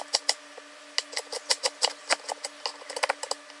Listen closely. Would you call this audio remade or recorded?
recorded